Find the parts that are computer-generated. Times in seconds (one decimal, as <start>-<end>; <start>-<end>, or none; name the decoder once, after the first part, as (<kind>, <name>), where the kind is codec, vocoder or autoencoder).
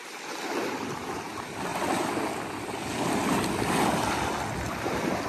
none